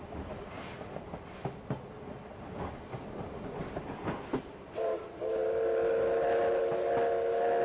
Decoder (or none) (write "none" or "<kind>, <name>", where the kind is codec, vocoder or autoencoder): none